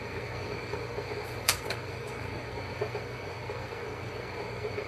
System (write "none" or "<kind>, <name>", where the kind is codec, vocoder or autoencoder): codec, SNAC